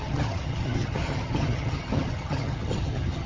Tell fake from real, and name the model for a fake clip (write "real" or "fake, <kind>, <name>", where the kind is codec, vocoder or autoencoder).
fake, vocoder, HiFi-GAN